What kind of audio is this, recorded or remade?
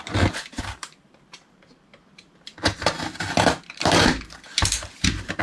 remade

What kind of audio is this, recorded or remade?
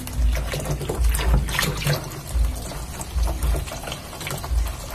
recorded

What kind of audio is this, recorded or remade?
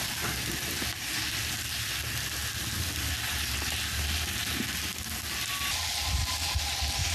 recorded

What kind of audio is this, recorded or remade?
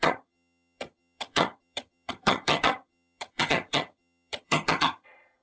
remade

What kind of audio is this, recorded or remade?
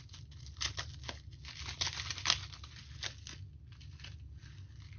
recorded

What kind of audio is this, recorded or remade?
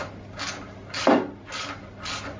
recorded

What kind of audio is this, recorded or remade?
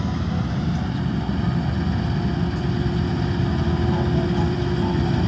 recorded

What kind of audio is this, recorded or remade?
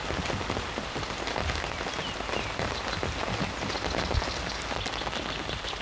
recorded